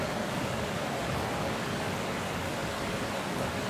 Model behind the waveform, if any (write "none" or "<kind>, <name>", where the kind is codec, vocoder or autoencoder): codec, DAC